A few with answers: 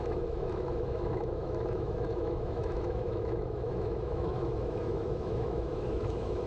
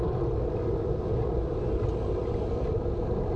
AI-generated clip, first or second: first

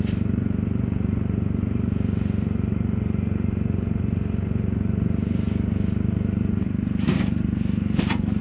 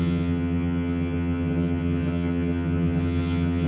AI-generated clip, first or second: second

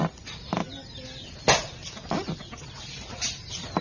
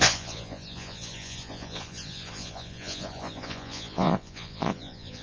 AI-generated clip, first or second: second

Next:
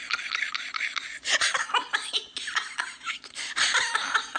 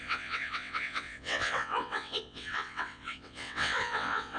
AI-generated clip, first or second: second